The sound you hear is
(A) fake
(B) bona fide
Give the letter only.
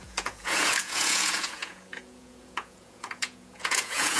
A